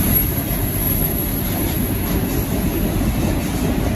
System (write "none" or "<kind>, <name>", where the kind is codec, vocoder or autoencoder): none